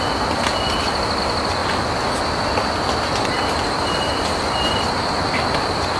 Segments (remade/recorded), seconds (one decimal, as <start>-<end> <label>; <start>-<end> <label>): 0.0-6.0 recorded